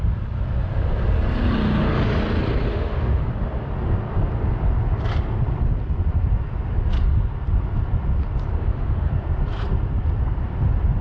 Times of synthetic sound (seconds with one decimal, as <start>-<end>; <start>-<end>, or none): 2.7-3.2; 8.6-9.1